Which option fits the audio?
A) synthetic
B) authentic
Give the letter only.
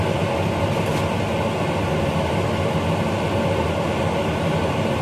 B